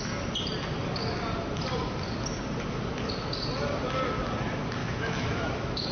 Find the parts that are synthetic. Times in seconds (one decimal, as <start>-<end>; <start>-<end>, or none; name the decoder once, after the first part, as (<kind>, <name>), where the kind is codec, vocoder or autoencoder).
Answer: 4.8-5.9 (autoencoder, DAC-VAE)